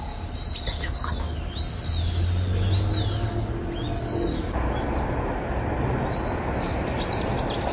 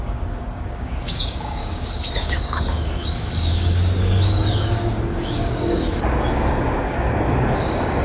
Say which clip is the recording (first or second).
first